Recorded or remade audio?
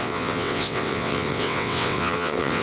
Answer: remade